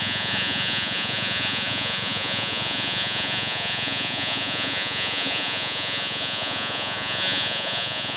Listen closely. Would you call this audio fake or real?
fake